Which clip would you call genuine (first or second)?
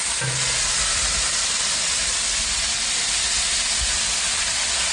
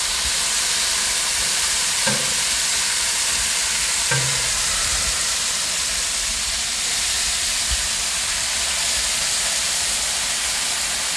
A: first